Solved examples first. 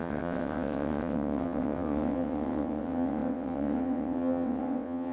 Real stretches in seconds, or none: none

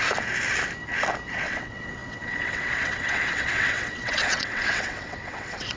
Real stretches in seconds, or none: 0.0-1.3

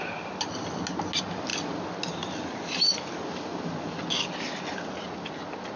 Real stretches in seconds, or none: 0.0-5.8

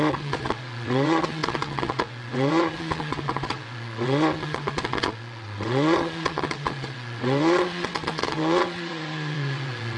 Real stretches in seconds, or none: none

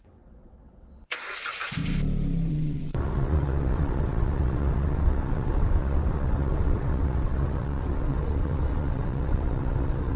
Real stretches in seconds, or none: 1.8-2.5

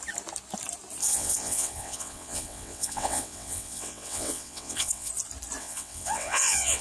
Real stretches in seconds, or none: 0.0-1.0; 5.1-5.6

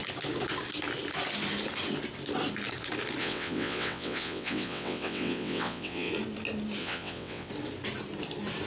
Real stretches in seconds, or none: 0.0-3.2; 6.1-6.8; 7.5-8.7